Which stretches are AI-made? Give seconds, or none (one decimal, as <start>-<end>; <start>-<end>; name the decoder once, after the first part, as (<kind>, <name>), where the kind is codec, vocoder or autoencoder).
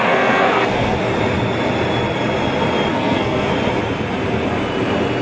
0.0-1.0 (codec, SNAC); 2.9-3.5